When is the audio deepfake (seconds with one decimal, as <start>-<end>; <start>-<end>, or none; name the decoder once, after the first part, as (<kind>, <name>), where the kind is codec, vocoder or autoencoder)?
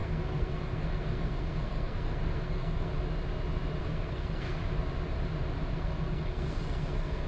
0.0-2.9 (codec, SNAC); 3.8-4.6; 5.7-7.3